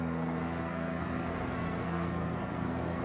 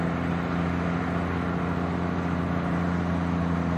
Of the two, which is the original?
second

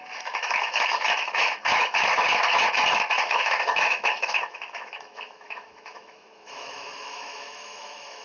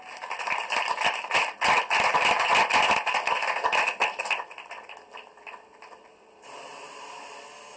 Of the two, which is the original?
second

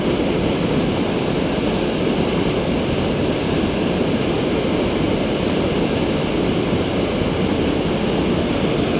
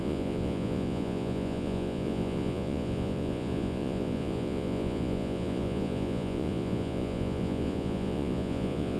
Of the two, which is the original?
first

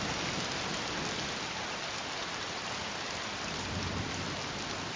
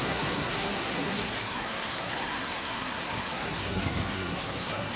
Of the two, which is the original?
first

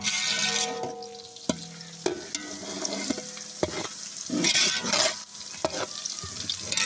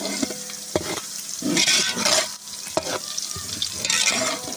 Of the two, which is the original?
first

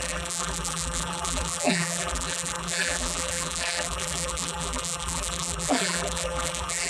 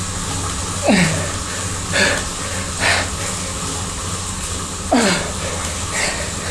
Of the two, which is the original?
second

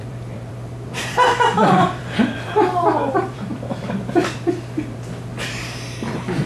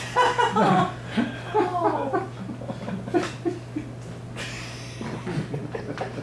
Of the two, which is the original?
second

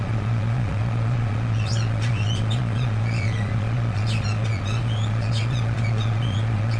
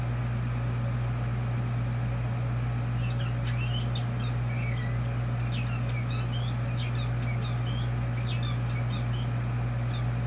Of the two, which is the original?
second